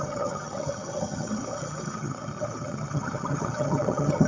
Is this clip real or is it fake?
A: fake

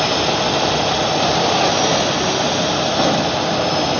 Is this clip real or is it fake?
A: real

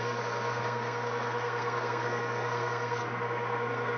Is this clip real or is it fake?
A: fake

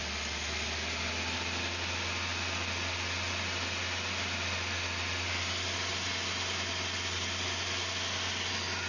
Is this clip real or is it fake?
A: real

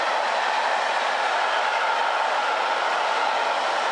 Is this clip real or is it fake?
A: real